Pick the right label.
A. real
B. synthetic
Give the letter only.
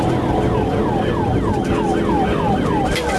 A